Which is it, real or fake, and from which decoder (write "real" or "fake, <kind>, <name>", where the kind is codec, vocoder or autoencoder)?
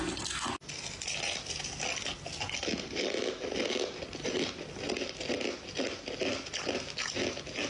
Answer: real